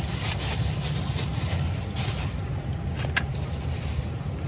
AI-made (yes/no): no